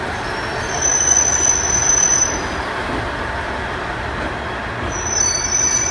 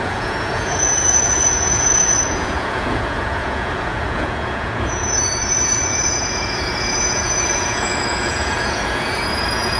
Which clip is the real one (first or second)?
first